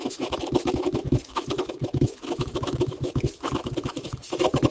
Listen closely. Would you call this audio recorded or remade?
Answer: remade